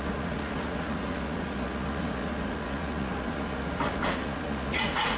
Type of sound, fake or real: fake